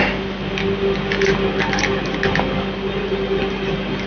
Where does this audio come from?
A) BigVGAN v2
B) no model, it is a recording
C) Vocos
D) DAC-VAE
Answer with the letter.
B